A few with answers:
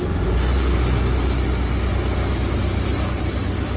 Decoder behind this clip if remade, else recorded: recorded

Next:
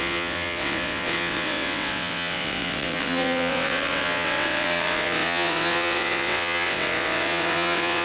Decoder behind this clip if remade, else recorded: remade, vocoder, WaveNeXt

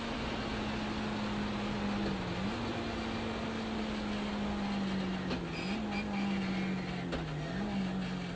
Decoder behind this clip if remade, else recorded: recorded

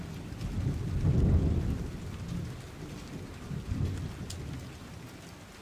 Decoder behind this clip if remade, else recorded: recorded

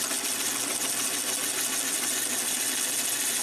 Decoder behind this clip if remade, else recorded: recorded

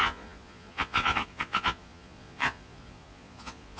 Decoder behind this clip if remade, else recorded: remade, vocoder, Vocos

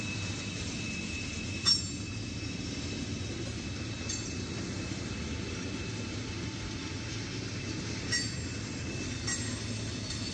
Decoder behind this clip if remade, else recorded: recorded